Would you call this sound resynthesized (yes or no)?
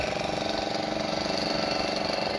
no